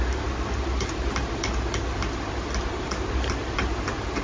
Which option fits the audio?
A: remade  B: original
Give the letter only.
A